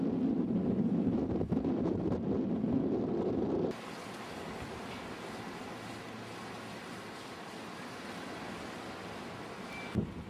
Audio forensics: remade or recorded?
recorded